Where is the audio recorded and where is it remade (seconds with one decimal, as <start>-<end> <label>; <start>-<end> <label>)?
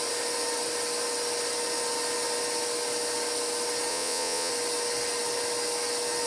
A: 0.0-3.9 recorded; 3.9-4.5 remade; 4.5-6.3 recorded